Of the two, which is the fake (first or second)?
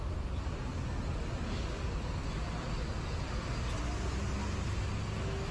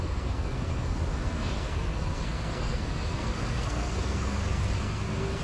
second